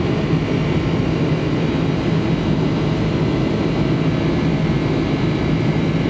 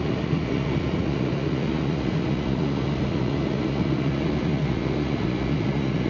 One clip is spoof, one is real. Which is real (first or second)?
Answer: first